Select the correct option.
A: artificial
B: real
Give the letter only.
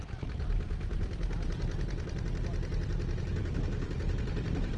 A